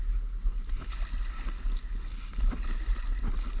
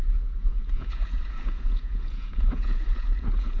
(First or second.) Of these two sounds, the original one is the first